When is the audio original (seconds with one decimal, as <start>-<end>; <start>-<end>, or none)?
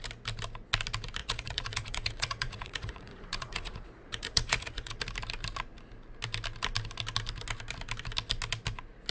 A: 0.0-1.2; 4.9-9.1